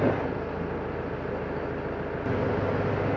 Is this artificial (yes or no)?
no